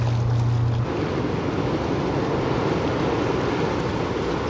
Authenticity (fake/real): real